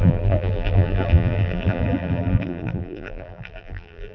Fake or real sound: fake